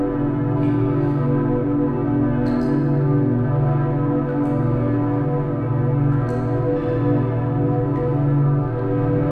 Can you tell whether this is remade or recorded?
recorded